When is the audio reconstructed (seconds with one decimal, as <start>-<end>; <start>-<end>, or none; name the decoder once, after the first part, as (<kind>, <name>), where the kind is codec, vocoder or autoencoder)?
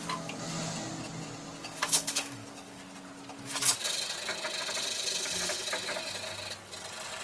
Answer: 1.6-2.8 (codec, DAC)